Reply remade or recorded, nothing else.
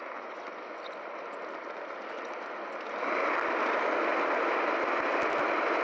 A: recorded